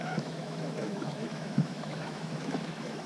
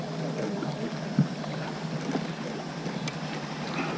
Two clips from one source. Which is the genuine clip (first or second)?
second